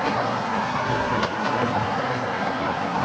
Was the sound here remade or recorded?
remade